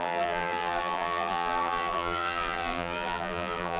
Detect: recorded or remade remade